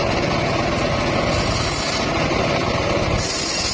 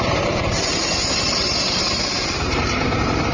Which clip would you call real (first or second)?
first